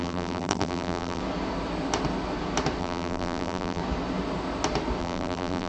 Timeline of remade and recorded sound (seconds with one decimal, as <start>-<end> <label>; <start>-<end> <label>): 0.0-1.2 remade; 1.2-2.8 recorded; 2.8-3.8 remade; 3.8-5.0 recorded; 5.0-5.7 remade